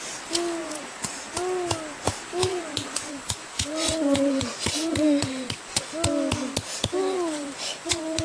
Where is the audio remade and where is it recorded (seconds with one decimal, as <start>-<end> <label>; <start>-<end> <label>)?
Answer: 0.0-0.6 recorded; 0.6-1.3 remade; 1.3-2.5 recorded; 2.5-5.9 remade; 5.9-7.0 recorded; 7.0-8.2 remade